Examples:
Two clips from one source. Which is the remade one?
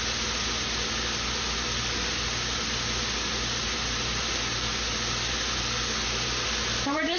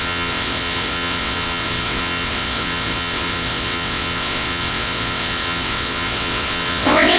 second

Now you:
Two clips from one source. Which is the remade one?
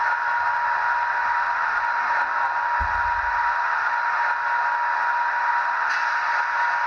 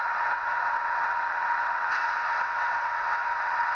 second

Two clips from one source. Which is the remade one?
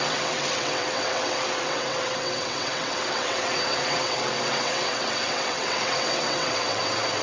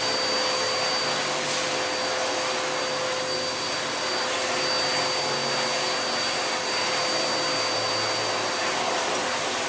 first